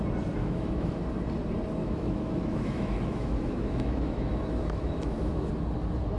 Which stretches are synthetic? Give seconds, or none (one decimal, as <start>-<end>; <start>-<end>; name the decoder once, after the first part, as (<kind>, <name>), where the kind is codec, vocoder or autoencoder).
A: 0.4-1.0 (autoencoder, DAC-VAE); 1.8-5.5